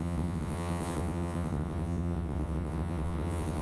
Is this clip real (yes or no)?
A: no